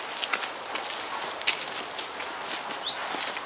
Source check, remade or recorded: recorded